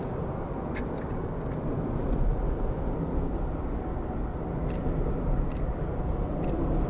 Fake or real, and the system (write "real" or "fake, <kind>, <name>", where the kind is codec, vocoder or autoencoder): real